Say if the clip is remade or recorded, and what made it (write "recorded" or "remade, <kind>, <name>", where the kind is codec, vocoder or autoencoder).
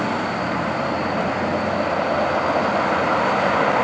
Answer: recorded